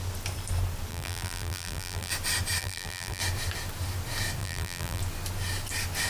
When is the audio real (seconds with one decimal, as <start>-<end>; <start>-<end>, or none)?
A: 0.0-0.9; 2.1-2.6; 3.2-4.4; 5.0-6.1